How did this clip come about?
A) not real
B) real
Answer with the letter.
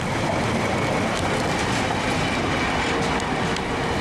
B